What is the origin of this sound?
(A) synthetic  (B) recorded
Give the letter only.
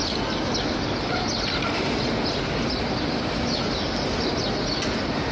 B